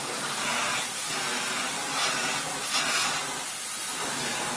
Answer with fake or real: real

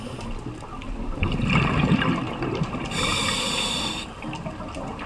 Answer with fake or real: real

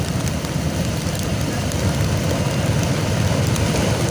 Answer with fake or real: fake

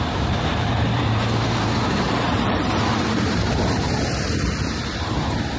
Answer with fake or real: fake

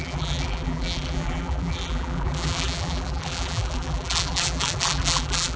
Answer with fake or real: fake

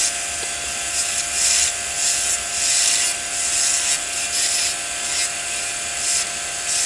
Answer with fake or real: real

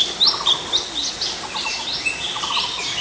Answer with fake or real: real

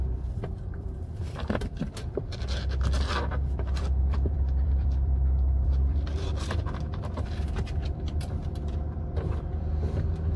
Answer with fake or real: fake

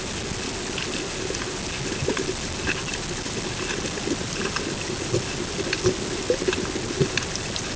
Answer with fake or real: real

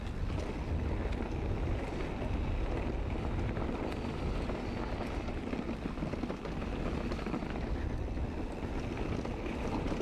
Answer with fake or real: real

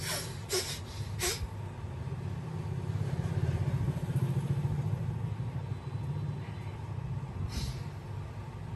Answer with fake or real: real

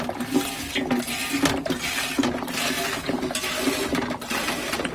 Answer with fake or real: real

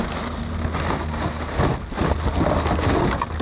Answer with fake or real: real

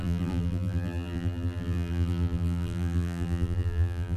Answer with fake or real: fake